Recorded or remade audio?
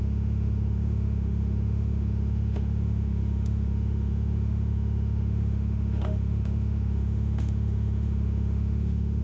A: remade